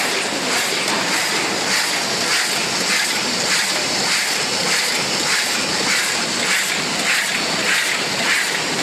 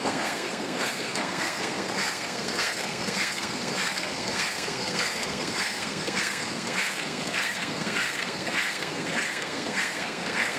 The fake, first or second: second